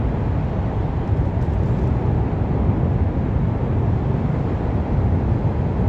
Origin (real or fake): real